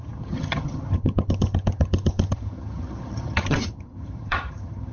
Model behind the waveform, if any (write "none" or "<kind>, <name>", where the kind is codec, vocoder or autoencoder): vocoder, HiFi-GAN